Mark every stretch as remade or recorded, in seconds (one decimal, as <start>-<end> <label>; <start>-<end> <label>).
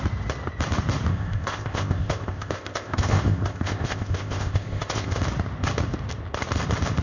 0.0-1.1 recorded; 1.1-5.2 remade; 5.2-7.0 recorded